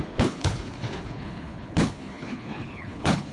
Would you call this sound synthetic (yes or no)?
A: yes